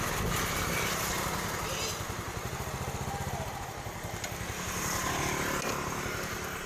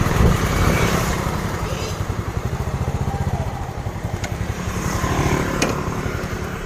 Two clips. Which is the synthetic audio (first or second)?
second